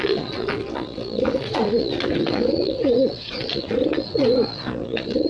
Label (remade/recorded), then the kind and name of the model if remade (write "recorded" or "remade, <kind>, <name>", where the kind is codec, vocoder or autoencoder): remade, vocoder, Vocos